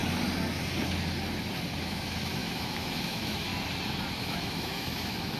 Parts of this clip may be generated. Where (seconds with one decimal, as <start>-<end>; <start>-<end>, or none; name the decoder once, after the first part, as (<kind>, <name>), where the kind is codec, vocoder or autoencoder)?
1.8-3.5 (autoencoder, DAC-VAE); 4.2-5.4